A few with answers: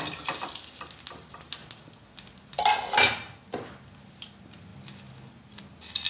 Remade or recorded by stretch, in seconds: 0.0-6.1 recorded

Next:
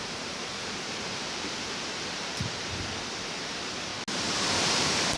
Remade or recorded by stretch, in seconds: 0.0-3.9 remade; 3.9-4.6 recorded; 4.6-5.2 remade

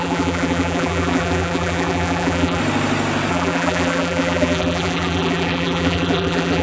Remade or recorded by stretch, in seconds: 0.0-2.6 remade; 2.6-3.3 recorded; 3.3-6.6 remade